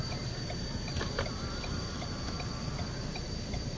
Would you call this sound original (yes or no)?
no